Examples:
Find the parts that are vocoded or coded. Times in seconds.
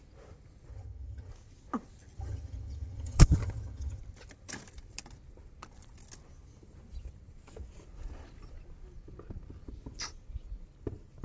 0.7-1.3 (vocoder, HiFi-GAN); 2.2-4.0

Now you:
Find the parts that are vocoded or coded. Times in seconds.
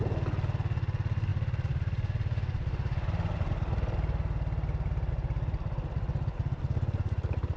none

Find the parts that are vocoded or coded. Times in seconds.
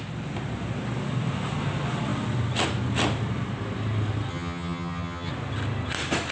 4.3-5.3 (vocoder, HiFi-GAN)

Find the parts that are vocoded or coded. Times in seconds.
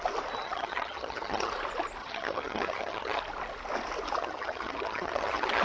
0.4-1.5 (vocoder, HiFi-GAN); 2.0-3.2; 4.2-5.6